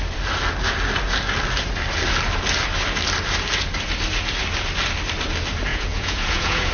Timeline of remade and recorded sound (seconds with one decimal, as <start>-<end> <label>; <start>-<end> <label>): 0.0-5.7 recorded; 5.7-6.7 remade